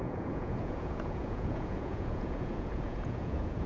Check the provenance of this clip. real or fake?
fake